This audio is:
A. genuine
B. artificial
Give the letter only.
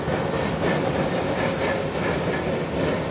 A